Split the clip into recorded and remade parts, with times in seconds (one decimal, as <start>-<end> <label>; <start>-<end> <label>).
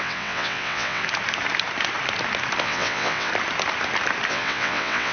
0.0-1.0 remade; 1.0-2.6 recorded; 2.6-3.3 remade; 3.3-4.3 recorded; 4.3-5.1 remade